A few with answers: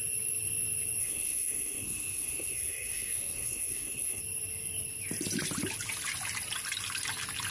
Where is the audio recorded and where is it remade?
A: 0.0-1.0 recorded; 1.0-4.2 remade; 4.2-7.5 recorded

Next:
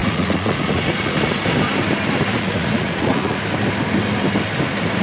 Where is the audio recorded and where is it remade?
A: 0.0-1.4 remade; 1.4-2.3 recorded; 2.3-3.4 remade; 3.4-5.0 recorded